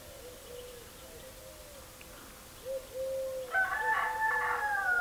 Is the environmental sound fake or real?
real